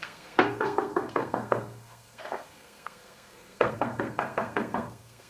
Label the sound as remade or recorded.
remade